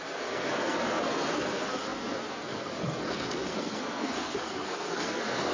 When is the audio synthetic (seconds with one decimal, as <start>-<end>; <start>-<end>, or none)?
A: 0.0-5.5